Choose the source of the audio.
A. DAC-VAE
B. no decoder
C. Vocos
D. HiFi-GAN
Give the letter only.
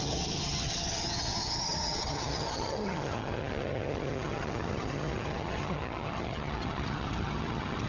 D